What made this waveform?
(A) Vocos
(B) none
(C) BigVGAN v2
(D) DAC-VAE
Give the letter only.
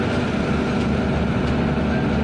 B